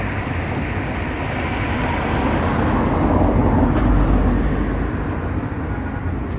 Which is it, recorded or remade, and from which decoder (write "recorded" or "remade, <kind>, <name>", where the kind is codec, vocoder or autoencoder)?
recorded